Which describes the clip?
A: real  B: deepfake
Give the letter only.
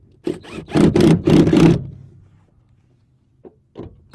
A